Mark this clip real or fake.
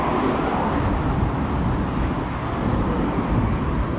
real